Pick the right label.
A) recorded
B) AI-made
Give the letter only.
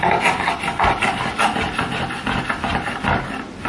A